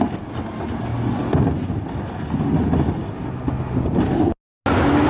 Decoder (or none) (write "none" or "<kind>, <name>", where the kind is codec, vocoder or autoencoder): none